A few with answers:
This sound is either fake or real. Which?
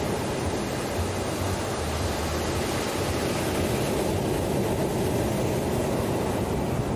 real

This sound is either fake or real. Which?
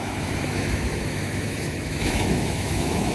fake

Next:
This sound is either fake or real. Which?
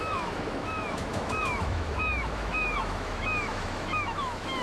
fake